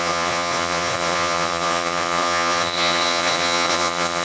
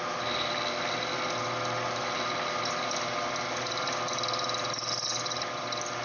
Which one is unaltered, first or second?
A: second